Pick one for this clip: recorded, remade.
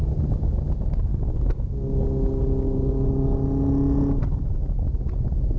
recorded